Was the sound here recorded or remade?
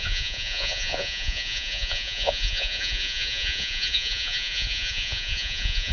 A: remade